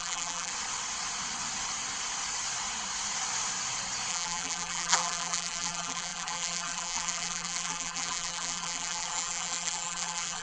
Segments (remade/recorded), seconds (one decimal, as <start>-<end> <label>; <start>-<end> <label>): 0.0-0.5 remade; 0.5-4.1 recorded; 4.1-10.4 remade